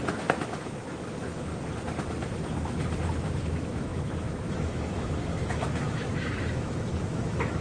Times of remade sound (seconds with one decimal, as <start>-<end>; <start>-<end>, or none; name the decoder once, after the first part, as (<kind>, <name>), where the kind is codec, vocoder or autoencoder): 0.0-1.5 (autoencoder, DAC-VAE); 3.1-7.6